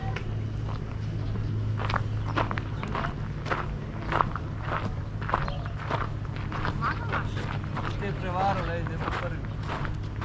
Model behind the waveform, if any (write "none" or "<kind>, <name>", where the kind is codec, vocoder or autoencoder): none